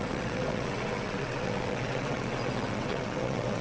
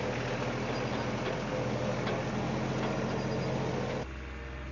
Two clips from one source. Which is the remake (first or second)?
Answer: first